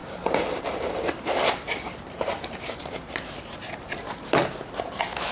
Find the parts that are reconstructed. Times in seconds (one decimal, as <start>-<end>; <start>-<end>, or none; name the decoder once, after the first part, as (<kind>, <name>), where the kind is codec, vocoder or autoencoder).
0.0-2.8 (vocoder, BigVGAN v2)